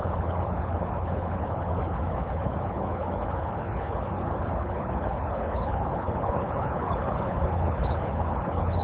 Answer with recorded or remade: remade